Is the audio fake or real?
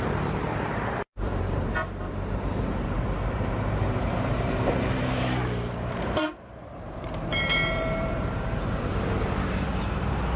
fake